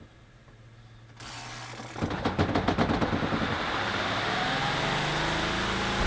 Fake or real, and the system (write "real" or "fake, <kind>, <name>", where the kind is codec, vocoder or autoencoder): real